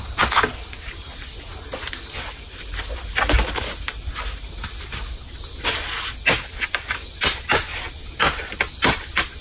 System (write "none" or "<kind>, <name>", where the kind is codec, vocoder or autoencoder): none